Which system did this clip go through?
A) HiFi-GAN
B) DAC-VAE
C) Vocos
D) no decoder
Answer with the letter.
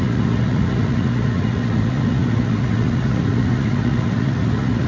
C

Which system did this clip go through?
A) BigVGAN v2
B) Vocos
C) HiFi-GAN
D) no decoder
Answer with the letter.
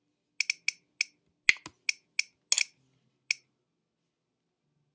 D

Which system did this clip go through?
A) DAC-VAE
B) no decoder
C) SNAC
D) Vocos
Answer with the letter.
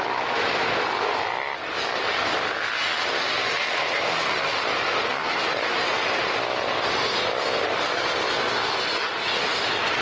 B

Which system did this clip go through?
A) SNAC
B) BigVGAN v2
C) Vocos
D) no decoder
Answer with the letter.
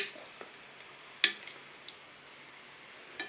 D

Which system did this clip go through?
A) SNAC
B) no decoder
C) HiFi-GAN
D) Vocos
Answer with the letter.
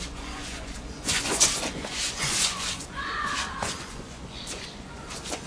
D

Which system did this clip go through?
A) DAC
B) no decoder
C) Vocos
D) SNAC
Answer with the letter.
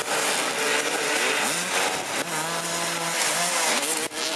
B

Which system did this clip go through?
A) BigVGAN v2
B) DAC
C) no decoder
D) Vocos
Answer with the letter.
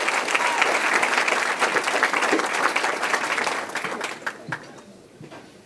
C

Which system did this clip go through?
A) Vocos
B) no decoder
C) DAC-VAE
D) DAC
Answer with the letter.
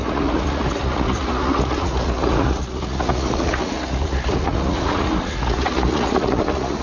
A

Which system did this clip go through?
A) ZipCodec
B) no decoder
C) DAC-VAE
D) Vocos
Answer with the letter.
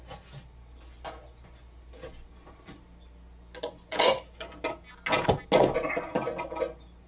B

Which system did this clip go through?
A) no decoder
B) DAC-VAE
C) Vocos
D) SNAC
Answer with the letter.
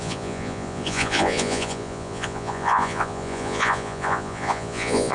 C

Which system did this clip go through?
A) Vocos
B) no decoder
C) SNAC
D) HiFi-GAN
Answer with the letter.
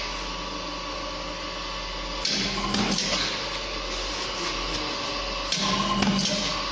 B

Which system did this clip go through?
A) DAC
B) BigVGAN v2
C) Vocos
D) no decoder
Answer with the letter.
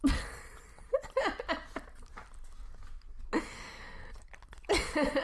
D